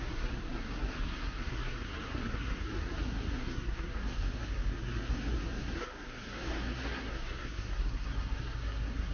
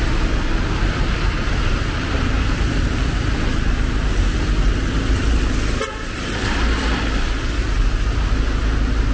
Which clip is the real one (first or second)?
second